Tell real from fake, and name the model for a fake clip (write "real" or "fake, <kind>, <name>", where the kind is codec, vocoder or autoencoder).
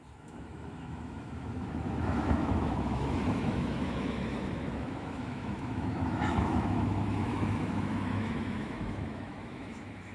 fake, autoencoder, DAC-VAE